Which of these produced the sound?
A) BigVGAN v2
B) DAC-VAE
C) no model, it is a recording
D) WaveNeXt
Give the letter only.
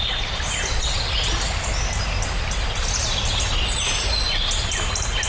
C